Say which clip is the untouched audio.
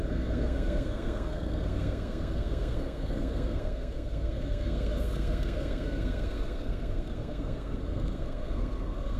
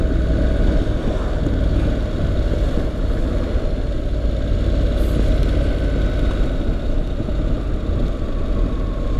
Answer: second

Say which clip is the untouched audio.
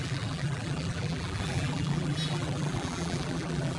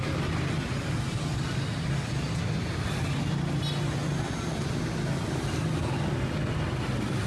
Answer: second